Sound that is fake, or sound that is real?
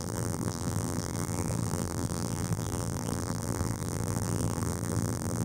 fake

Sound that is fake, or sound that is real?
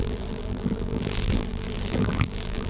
fake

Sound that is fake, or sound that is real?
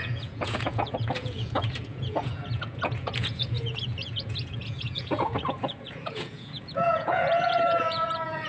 fake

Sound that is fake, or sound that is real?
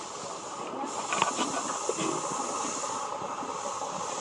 real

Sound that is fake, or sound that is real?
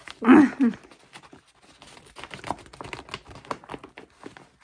real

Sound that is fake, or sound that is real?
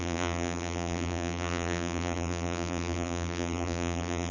fake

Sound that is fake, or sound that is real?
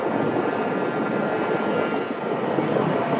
real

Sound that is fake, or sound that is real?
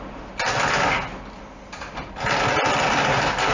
real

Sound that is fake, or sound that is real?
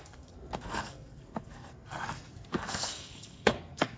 fake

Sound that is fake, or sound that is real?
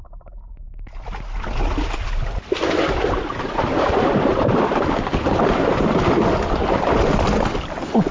real